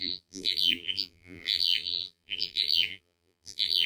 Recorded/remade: remade